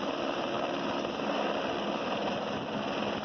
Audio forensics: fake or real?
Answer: real